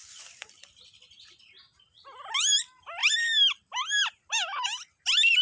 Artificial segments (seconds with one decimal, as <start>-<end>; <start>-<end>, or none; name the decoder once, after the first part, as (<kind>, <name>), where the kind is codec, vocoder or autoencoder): 0.0-2.6 (vocoder, BigVGAN v2); 3.0-4.1